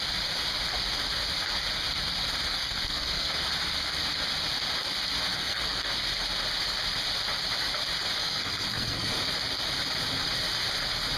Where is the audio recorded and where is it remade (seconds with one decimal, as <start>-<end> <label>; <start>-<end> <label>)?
0.0-2.5 recorded; 2.5-3.3 remade; 3.3-5.3 recorded; 5.3-5.9 remade; 5.9-8.2 recorded; 8.2-9.2 remade; 9.2-11.2 recorded